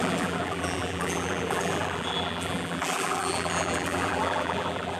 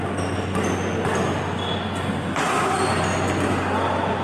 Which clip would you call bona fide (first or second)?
second